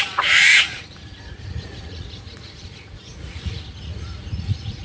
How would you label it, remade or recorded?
remade